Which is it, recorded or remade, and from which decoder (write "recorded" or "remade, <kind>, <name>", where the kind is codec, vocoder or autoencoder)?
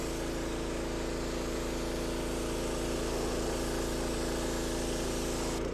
recorded